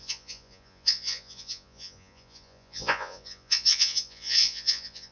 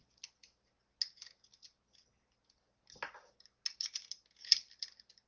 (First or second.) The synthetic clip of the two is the first